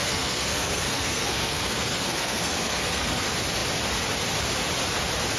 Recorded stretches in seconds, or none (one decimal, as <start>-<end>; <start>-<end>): 3.2-5.4